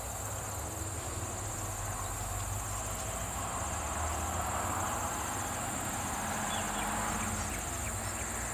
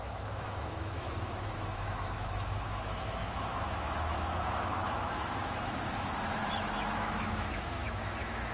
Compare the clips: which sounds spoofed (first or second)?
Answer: second